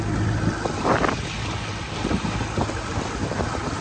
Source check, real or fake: real